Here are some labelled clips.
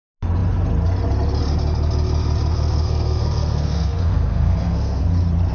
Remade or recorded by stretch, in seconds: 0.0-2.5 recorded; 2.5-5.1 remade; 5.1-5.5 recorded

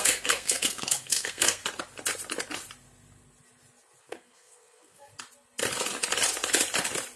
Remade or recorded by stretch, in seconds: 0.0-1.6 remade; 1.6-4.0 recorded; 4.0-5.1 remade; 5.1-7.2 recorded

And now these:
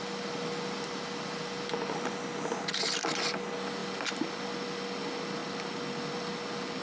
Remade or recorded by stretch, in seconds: 0.0-6.8 recorded

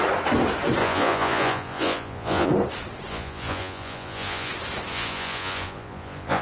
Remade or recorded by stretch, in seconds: 0.0-0.8 recorded; 0.8-2.5 remade; 2.5-3.1 recorded; 3.1-4.5 remade; 4.5-4.9 recorded; 4.9-6.4 remade

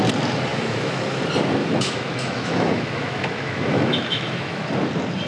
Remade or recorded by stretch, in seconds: 0.0-0.5 recorded; 0.5-1.2 remade; 1.2-1.6 recorded; 1.6-4.7 remade; 4.7-5.3 recorded